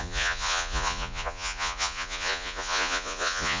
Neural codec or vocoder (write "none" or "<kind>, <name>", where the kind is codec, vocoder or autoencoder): vocoder, Vocos